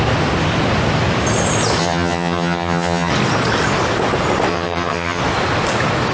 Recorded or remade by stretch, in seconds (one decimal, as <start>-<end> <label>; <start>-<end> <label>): 0.0-1.8 recorded; 1.8-3.1 remade; 3.1-4.5 recorded; 4.5-5.2 remade; 5.2-6.1 recorded